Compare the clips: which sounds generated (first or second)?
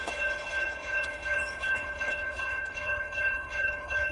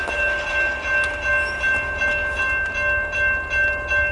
first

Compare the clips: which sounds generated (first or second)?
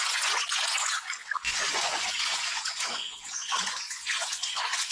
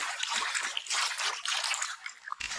first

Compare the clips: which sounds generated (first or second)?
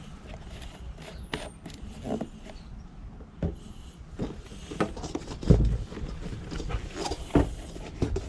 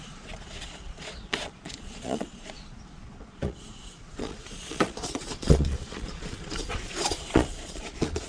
second